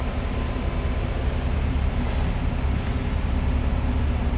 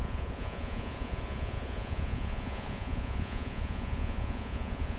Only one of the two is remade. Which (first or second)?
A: second